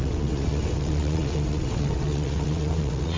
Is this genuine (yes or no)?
no